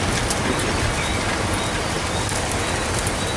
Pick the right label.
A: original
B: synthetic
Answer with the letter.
A